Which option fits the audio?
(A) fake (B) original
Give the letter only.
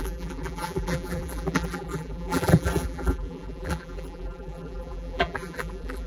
A